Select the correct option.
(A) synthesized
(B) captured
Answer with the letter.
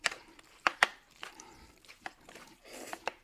A